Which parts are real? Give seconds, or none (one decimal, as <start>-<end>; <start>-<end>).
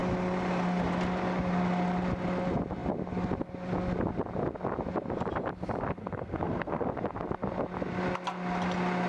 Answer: 0.0-6.0; 6.8-9.1